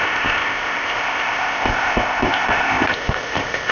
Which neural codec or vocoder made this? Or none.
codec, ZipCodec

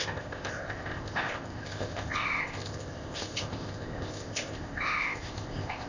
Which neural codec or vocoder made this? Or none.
codec, ZipCodec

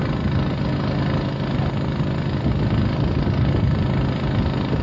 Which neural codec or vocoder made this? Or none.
none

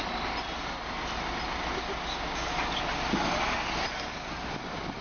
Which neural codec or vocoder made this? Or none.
none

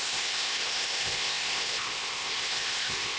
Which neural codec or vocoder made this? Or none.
codec, ZipCodec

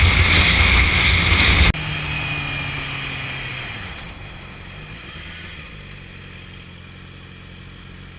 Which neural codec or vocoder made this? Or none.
none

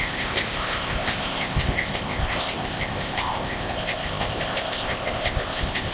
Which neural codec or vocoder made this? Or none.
codec, ZipCodec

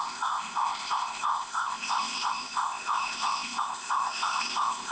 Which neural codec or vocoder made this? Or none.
codec, ZipCodec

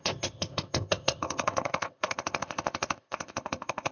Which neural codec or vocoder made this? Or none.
codec, ZipCodec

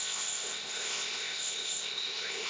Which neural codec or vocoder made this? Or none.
codec, ZipCodec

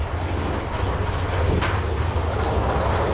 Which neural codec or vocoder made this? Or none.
none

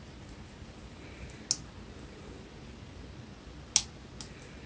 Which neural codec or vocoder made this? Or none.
none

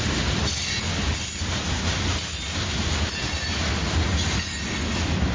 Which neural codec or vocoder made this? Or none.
none